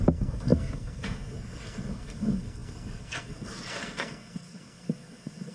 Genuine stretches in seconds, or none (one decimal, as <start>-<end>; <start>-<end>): none